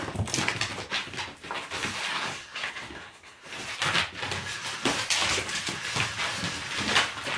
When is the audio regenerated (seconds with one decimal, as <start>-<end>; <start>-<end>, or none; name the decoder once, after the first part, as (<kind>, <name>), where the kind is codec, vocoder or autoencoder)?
2.1-3.4 (codec, SNAC)